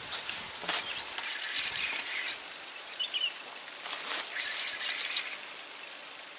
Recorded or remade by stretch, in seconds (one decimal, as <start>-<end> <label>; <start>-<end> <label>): 0.0-6.4 recorded